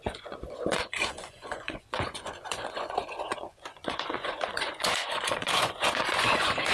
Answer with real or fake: fake